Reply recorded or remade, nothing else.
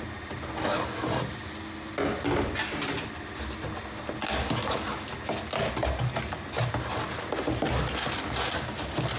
recorded